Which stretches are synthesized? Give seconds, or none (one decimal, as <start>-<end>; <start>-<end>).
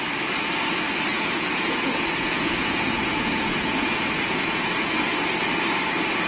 1.1-4.9